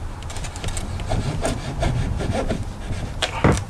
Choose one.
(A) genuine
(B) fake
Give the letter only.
A